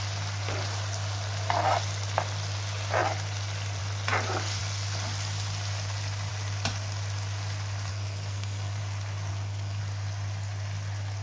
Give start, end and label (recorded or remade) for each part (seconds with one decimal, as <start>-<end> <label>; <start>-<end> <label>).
0.0-7.9 recorded; 7.9-8.8 remade; 8.8-9.3 recorded; 9.3-9.8 remade; 9.8-11.2 recorded